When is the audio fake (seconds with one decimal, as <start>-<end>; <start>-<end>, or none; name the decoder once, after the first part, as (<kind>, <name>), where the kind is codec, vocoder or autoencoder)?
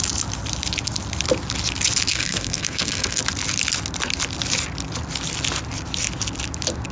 2.1-3.2 (codec, SNAC)